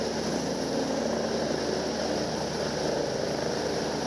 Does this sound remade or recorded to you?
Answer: recorded